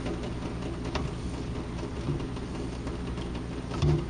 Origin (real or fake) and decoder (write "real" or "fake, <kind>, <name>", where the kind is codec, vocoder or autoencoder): real